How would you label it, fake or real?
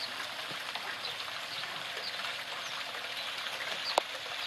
real